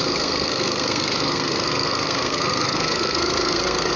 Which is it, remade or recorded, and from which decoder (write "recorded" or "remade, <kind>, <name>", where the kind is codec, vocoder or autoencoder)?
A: remade, codec, SNAC